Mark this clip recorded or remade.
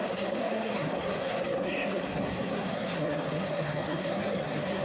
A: remade